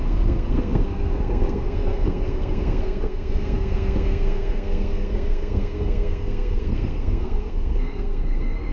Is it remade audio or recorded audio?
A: remade